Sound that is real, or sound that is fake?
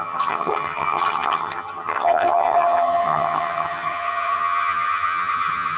fake